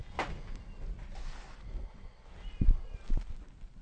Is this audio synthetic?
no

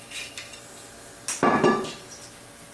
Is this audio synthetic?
no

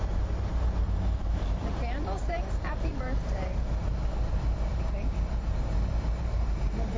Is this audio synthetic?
yes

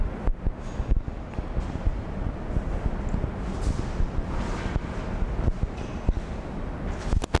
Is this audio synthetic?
no